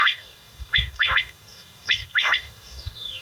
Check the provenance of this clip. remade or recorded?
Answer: remade